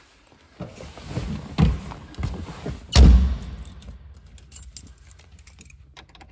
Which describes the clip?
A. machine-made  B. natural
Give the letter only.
B